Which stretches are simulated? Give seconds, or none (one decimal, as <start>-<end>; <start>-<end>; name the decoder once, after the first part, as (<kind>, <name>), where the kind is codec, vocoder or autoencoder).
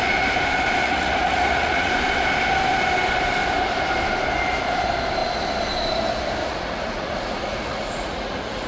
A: 0.8-1.9 (vocoder, Vocos); 6.4-8.7